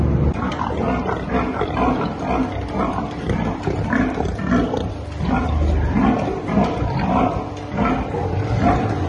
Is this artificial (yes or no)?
no